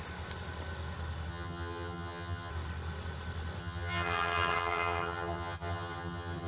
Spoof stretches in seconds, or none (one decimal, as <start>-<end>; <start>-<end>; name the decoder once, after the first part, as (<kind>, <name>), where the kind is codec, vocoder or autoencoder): 1.3-2.5 (vocoder, HiFi-GAN); 3.6-6.5